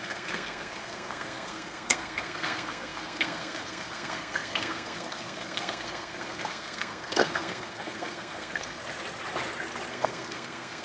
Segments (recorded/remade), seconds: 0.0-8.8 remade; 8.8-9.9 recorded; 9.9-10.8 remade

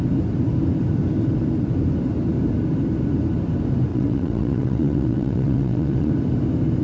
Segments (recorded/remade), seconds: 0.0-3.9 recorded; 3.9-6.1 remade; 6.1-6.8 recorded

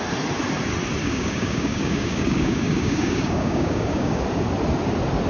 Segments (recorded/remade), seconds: 0.0-1.0 recorded; 1.0-4.2 remade; 4.2-5.3 recorded